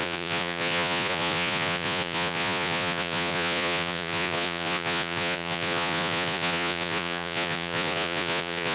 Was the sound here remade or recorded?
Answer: remade